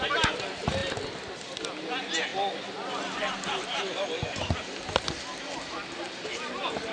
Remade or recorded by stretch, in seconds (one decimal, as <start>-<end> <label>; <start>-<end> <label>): 0.0-6.9 recorded